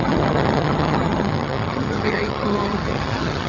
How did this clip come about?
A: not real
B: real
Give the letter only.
A